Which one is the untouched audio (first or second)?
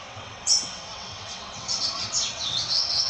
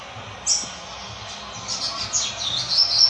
second